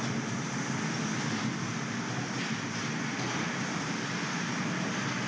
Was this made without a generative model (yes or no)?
yes